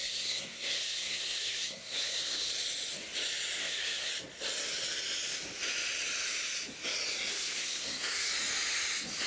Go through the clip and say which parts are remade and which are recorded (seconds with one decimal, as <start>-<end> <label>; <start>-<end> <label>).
0.0-2.5 remade; 2.5-3.6 recorded; 3.6-4.1 remade; 4.1-7.3 recorded; 7.3-8.3 remade; 8.3-9.3 recorded